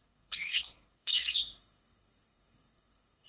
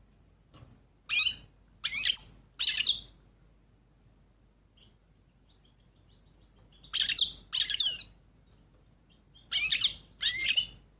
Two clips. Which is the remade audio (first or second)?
first